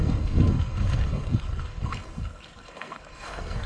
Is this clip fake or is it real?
fake